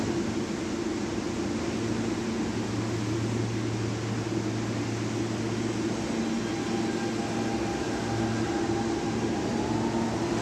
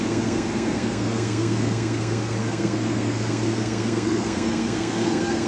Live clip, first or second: first